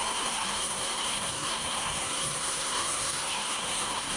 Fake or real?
fake